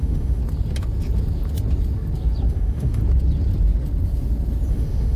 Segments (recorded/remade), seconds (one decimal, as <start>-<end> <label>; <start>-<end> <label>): 0.0-0.4 remade; 0.4-2.5 recorded; 2.5-3.0 remade; 3.0-4.7 recorded; 4.7-5.2 remade